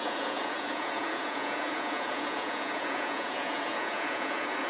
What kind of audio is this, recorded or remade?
remade